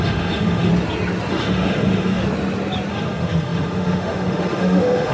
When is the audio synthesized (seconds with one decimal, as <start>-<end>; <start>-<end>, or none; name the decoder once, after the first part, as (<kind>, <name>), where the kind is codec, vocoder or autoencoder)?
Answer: 0.0-0.7 (autoencoder, DAC-VAE); 1.3-2.2; 2.9-5.1